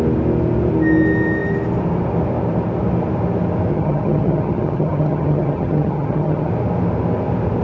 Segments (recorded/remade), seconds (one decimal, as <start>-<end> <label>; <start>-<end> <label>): 0.0-3.7 recorded; 3.7-6.5 remade; 6.5-7.6 recorded